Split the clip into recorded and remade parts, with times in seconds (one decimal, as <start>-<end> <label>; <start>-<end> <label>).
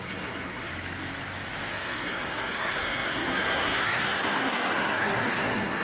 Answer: 0.0-0.7 remade; 0.7-1.7 recorded; 1.7-5.8 remade